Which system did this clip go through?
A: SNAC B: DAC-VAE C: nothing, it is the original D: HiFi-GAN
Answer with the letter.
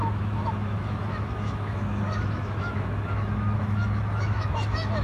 B